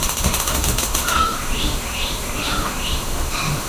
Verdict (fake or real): fake